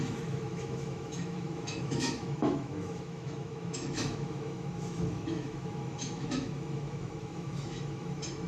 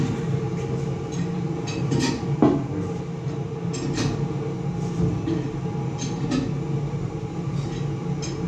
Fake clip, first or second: first